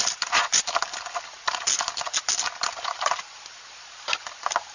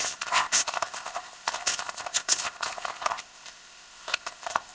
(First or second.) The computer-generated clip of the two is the second